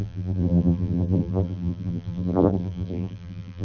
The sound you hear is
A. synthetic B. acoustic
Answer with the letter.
A